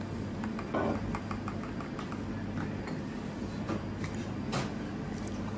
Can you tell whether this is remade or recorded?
recorded